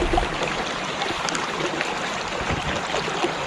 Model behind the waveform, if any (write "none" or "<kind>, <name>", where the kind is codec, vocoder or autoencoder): none